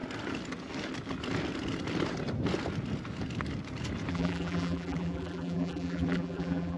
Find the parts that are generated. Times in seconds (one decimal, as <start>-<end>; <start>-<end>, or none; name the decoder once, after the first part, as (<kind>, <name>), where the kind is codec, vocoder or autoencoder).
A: 4.1-6.8 (vocoder, BigVGAN v2)